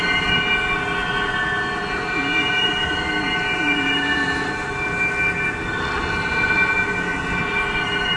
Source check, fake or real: real